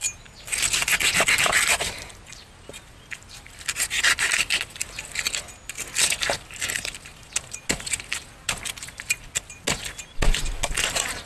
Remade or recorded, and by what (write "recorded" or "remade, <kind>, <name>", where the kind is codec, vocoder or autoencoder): recorded